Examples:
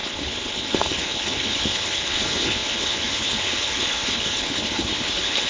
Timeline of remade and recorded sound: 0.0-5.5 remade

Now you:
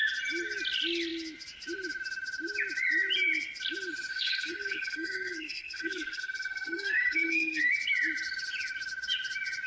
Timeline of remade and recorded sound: 0.0-4.1 recorded; 4.1-7.6 remade; 7.6-9.7 recorded

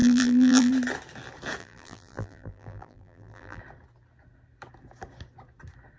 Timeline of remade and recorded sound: 0.0-0.7 remade; 0.7-1.6 recorded; 1.6-3.6 remade; 3.6-6.0 recorded